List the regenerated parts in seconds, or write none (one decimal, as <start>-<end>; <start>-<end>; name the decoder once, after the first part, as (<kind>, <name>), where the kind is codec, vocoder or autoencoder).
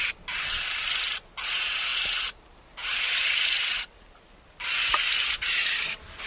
none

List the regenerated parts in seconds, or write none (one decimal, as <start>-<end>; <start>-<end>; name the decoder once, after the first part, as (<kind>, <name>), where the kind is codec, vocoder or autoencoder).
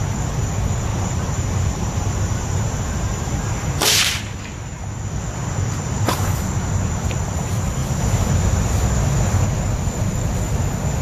0.9-4.2 (vocoder, BigVGAN v2); 5.4-6.3; 7.8-8.3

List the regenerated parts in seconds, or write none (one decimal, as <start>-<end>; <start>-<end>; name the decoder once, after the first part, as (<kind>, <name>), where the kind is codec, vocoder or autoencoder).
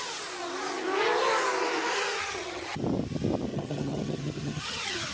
2.2-2.8 (vocoder, HiFi-GAN); 3.5-5.1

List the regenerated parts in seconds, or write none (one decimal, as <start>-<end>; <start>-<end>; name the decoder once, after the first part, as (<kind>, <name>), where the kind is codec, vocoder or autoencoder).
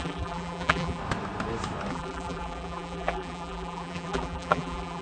0.0-1.0 (vocoder, BigVGAN v2); 1.9-5.0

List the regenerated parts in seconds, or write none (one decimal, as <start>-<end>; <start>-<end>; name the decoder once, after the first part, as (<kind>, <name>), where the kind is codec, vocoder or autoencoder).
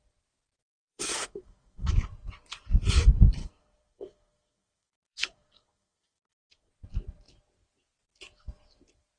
0.7-1.9 (codec, SNAC); 3.4-6.7